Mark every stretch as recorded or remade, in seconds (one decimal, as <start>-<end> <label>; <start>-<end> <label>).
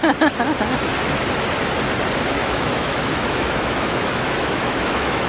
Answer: 0.0-2.4 recorded; 2.4-5.3 remade